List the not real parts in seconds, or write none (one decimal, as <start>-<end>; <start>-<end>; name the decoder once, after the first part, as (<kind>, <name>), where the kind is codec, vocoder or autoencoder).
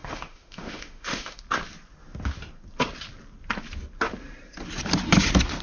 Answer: 0.0-1.4 (autoencoder, DAC-VAE)